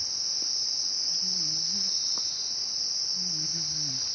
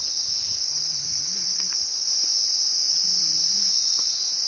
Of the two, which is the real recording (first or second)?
first